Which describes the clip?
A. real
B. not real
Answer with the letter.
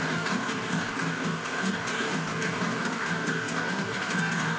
B